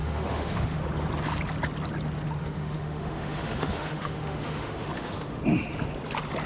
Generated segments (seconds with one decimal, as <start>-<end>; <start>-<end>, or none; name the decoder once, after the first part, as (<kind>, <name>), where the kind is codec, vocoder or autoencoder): 0.0-0.8 (autoencoder, DAC-VAE); 2.4-5.4